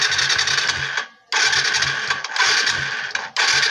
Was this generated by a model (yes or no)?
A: no